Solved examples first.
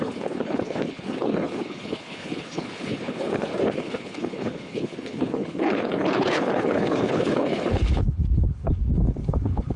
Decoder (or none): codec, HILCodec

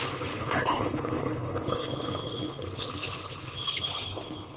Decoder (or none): codec, HILCodec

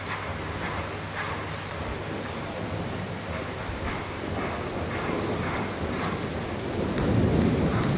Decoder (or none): none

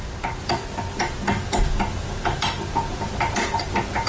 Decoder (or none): none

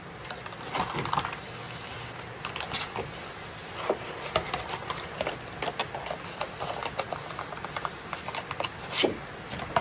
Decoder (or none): none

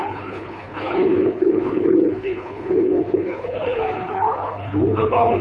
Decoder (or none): codec, HILCodec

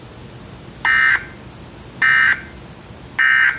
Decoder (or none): none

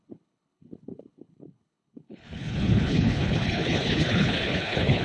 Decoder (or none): codec, HILCodec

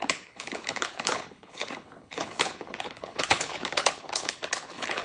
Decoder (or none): codec, HILCodec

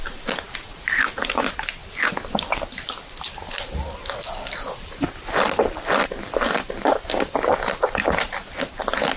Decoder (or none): none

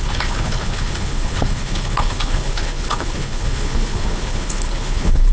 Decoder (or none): codec, HILCodec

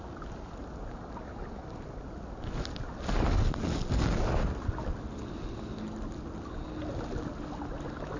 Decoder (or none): none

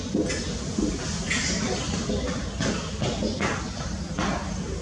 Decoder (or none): none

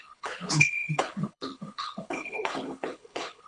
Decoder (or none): codec, HILCodec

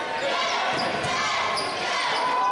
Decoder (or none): none